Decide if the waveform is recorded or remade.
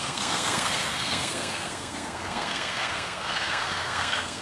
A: remade